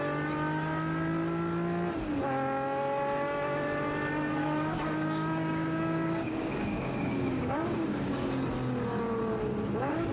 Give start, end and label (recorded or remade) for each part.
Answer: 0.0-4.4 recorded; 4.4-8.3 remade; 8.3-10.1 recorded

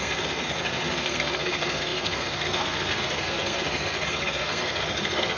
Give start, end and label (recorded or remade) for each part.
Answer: 0.0-5.4 remade

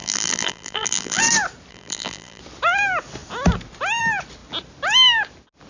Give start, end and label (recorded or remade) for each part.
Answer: 0.0-1.2 remade; 1.2-1.7 recorded; 1.7-2.4 remade; 2.4-5.7 recorded

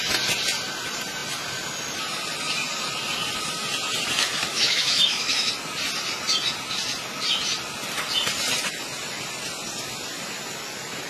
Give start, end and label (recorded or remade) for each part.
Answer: 0.0-4.5 recorded; 4.5-5.5 remade; 5.5-11.1 recorded

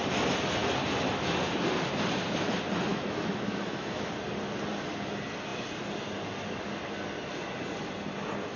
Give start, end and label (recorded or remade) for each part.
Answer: 0.0-2.9 recorded; 2.9-4.1 remade; 4.1-8.6 recorded

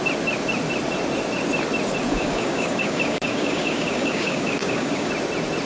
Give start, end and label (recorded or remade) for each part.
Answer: 0.0-2.1 recorded; 2.1-5.1 remade; 5.1-5.7 recorded

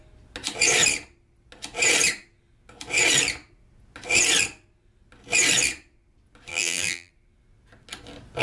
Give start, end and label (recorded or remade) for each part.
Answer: 0.0-6.5 recorded; 6.5-7.1 remade; 7.1-8.4 recorded